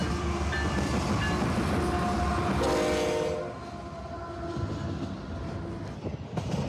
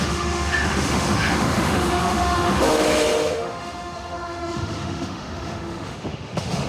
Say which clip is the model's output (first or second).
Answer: second